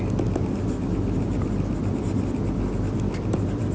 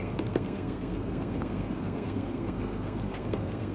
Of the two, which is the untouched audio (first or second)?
first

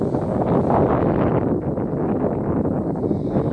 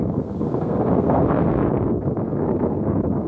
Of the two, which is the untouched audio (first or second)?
first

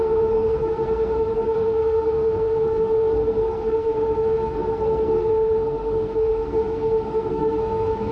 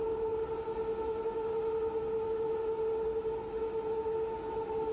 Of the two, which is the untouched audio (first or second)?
second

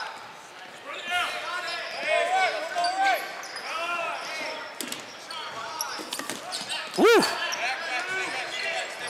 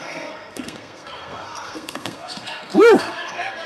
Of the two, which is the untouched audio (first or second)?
first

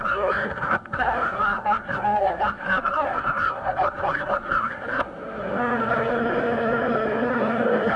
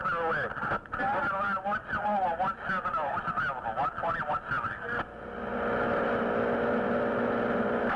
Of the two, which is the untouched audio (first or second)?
second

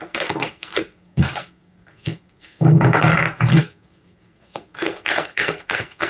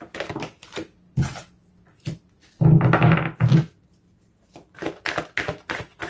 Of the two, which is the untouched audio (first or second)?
second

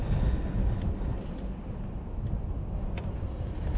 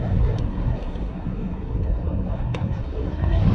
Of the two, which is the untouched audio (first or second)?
first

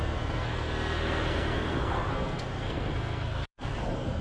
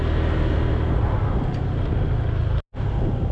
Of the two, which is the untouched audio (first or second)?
second